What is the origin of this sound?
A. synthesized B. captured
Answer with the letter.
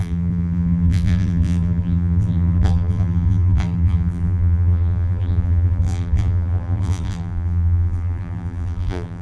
A